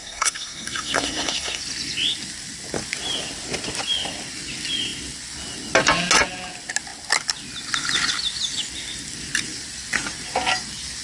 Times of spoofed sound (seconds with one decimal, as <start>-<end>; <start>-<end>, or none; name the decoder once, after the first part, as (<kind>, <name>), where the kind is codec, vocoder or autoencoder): 0.0-1.6 (codec, SNAC)